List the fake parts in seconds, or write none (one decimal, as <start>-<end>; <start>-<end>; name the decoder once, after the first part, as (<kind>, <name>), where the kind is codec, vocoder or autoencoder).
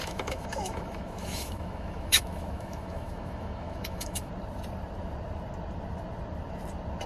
0.0-4.3 (autoencoder, DAC-VAE)